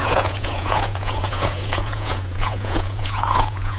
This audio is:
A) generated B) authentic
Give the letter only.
A